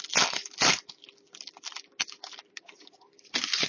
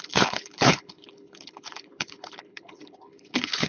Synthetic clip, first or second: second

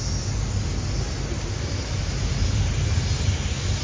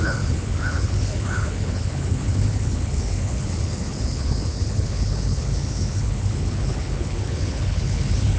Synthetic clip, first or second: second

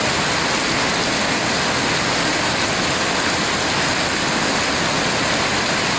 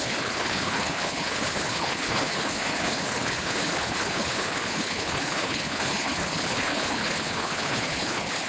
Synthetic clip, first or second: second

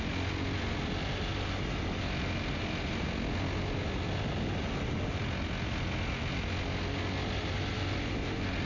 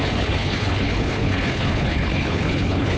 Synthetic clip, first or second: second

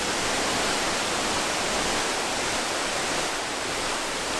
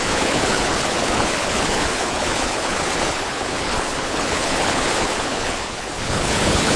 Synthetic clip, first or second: second